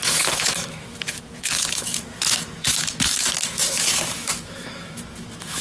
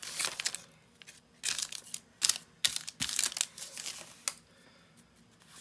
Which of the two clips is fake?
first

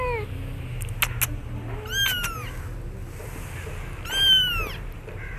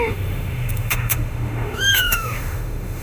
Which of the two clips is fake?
second